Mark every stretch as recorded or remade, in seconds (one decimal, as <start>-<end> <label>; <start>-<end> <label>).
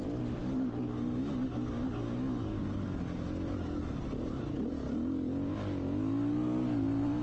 0.0-7.2 recorded